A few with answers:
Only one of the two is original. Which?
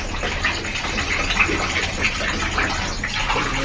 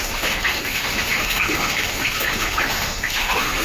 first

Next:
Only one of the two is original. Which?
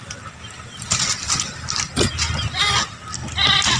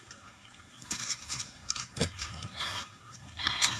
first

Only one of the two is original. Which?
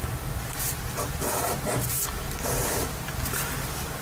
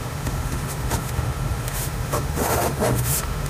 first